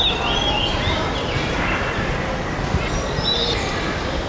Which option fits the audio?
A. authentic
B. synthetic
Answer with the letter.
A